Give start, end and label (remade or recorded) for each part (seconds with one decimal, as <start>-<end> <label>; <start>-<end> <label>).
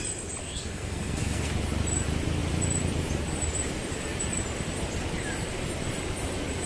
0.0-0.4 recorded; 0.4-1.5 remade; 1.5-6.7 recorded